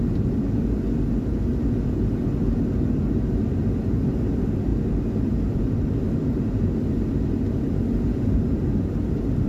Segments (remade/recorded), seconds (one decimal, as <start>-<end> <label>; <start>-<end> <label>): 0.0-9.5 recorded